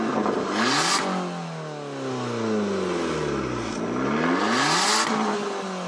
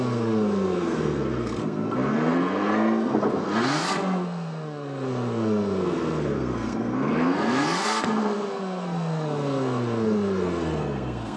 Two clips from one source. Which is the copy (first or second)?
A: second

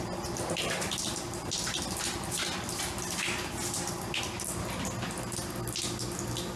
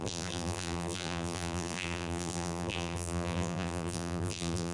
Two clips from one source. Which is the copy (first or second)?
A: second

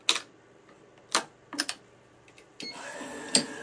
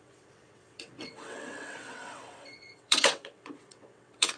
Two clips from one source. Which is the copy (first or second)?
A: second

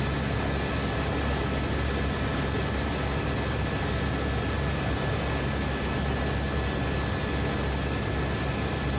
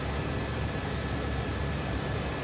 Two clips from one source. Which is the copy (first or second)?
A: second